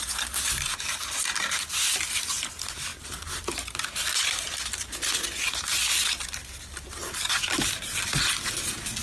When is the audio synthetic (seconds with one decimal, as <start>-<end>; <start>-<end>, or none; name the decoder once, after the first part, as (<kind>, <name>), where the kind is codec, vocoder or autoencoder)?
none